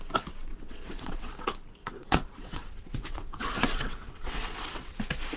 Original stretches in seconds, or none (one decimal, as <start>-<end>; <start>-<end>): 0.0-0.5; 1.3-1.8; 5.0-5.4